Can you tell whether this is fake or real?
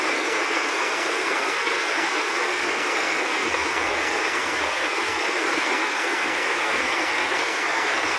fake